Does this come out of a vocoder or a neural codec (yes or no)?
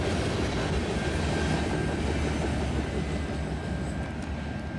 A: no